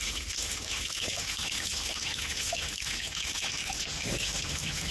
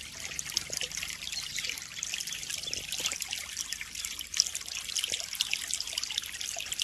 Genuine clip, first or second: second